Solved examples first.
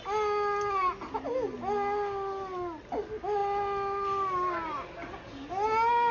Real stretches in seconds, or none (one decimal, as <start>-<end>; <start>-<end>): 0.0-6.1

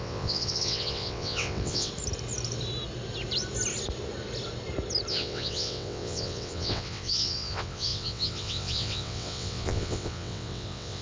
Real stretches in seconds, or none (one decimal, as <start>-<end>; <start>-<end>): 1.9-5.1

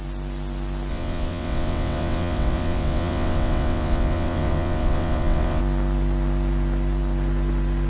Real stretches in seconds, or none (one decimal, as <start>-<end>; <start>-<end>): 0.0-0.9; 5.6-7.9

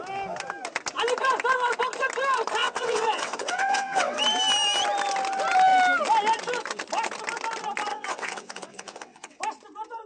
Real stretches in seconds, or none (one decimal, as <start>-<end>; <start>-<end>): 0.0-2.6; 4.2-7.9; 9.4-10.1